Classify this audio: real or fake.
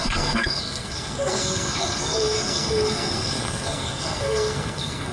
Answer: fake